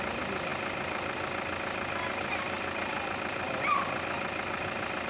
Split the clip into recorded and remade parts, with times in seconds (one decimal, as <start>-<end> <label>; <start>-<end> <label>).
0.0-5.1 recorded